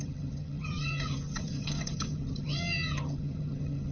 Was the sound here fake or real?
fake